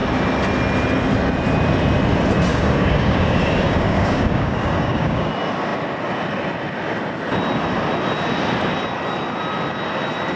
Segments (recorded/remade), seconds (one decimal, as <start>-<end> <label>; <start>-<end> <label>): 0.0-2.5 recorded; 2.5-5.3 remade; 5.3-10.4 recorded